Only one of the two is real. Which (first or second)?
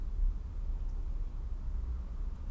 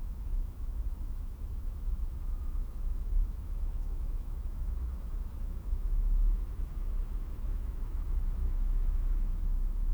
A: first